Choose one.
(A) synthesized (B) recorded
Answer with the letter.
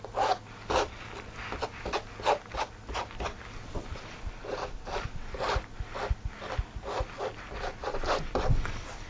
B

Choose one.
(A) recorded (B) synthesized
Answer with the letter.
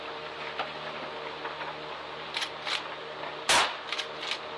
A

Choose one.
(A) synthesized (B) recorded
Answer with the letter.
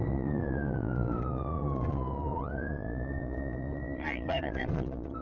A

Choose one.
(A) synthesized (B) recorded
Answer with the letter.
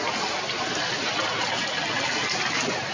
B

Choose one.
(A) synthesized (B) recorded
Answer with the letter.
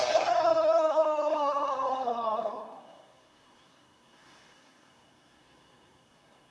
A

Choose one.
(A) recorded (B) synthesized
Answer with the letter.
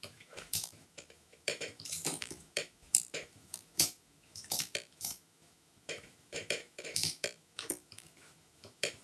B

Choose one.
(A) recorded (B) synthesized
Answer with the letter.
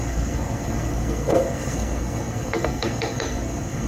B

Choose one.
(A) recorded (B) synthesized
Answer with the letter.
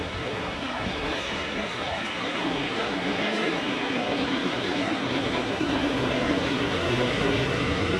B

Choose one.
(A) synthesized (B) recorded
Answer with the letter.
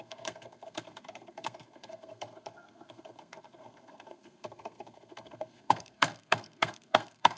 A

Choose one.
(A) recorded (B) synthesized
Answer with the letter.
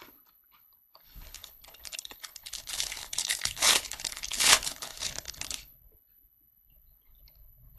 B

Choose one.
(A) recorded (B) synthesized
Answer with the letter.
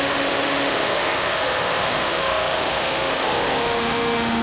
B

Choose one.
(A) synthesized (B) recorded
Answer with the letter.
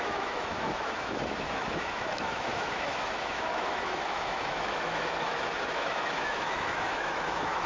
A